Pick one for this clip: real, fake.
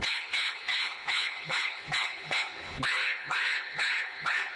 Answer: fake